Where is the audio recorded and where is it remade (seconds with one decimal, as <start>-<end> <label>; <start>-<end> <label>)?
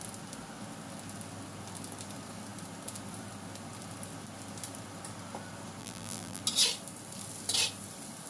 0.0-5.8 recorded; 5.8-6.4 remade; 6.4-8.3 recorded